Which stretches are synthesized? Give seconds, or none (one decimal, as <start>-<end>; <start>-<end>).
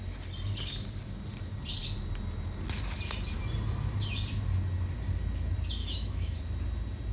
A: 5.8-6.4